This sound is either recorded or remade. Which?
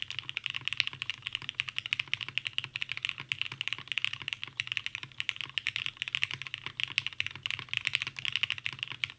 recorded